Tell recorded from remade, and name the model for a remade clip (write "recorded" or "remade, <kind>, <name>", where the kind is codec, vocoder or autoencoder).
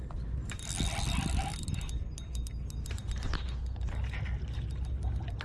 recorded